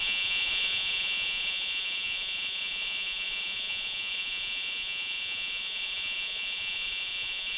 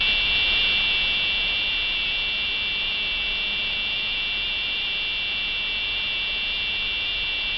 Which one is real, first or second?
second